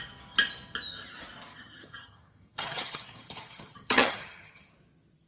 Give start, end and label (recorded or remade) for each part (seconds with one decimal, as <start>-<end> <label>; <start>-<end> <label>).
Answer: 0.0-1.5 recorded; 1.5-4.7 remade; 4.7-5.3 recorded